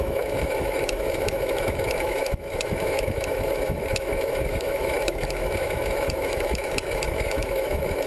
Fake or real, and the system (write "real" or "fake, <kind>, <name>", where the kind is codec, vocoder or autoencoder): fake, autoencoder, DAC-VAE